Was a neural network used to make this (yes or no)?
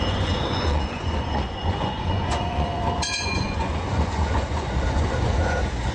yes